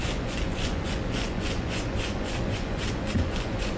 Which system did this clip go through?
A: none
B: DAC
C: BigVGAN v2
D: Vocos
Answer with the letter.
D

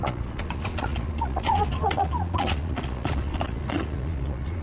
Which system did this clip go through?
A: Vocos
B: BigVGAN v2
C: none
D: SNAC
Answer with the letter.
A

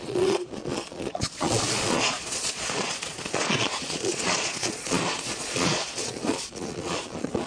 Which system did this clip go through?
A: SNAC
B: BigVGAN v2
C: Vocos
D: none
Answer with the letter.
C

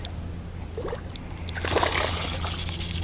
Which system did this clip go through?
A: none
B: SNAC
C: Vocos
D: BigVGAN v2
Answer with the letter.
A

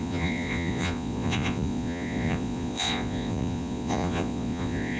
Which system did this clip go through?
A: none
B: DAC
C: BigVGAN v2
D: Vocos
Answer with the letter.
D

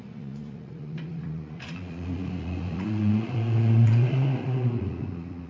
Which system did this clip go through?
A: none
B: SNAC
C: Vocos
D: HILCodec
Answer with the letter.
C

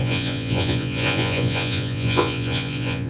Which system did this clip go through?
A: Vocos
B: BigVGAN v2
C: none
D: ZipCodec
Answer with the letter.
A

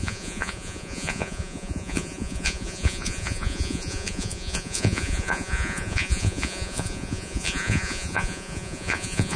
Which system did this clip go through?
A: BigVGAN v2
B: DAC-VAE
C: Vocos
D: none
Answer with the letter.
C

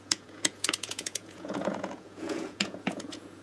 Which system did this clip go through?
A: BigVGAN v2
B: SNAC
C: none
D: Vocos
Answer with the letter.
D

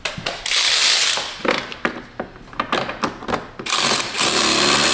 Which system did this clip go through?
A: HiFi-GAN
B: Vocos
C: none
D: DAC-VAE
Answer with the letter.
C